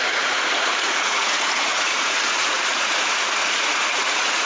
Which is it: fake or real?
fake